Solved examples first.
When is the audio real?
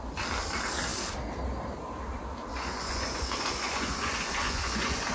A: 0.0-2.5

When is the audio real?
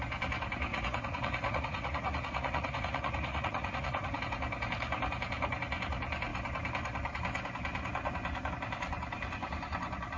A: 0.0-0.7; 4.2-10.2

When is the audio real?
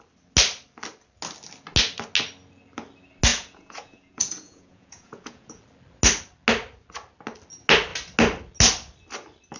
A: 0.0-3.3; 5.6-9.6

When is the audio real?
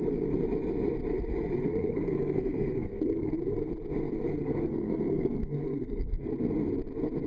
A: 0.0-1.7; 3.3-4.4; 6.3-7.3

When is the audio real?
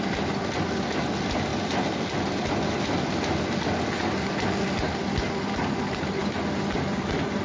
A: 0.0-6.2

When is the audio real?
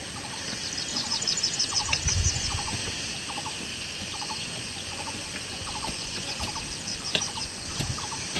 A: 0.0-0.9; 2.7-3.7; 6.4-6.9; 8.0-8.4